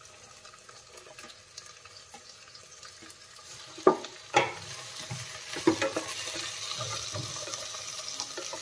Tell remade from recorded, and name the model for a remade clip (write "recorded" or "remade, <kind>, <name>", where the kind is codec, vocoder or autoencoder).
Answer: recorded